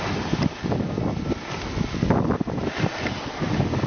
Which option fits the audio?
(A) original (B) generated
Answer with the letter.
A